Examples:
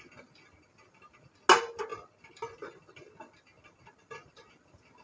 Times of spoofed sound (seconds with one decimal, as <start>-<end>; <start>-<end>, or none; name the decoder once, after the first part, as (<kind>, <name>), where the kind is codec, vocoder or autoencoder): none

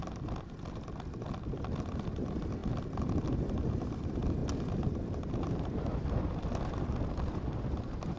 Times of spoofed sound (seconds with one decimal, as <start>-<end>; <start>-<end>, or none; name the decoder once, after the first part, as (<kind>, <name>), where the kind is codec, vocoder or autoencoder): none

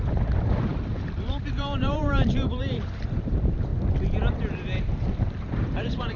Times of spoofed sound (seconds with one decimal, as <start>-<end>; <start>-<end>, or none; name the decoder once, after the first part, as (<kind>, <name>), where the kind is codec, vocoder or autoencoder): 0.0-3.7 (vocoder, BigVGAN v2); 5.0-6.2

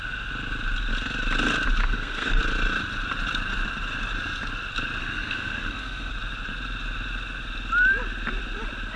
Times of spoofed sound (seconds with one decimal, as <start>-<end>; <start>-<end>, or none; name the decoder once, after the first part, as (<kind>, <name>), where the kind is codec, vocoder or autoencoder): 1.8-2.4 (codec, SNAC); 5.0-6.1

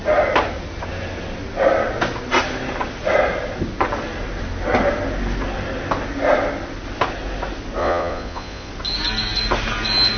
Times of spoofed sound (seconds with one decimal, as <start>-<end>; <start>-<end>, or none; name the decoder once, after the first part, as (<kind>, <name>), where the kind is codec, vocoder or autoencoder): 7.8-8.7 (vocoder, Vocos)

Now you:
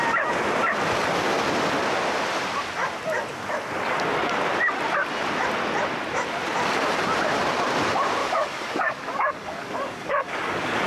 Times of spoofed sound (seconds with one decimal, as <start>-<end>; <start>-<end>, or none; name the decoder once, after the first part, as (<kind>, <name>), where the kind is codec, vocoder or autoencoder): 8.2-10.9 (codec, DAC)

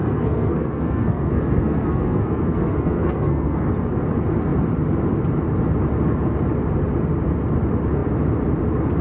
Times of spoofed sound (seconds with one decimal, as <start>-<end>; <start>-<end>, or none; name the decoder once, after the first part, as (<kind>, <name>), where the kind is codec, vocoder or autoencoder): 0.0-3.7 (codec, SNAC)

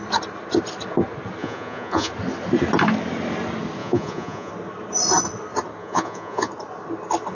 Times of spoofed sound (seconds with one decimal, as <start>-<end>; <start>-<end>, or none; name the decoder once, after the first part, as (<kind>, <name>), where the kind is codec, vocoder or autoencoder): 1.4-2.1 (vocoder, Vocos); 3.8-4.5; 5.8-6.5